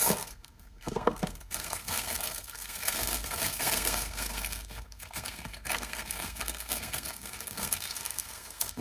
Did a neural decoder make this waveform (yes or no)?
yes